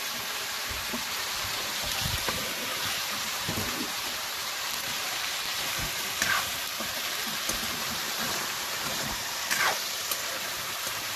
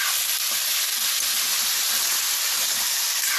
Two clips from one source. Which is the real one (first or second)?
second